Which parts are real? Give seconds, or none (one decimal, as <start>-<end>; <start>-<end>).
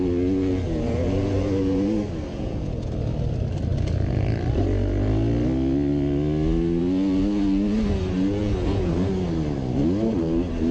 0.0-2.3; 2.9-8.4; 8.9-10.7